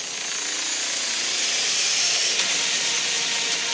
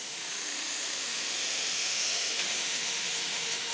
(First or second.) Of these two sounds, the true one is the first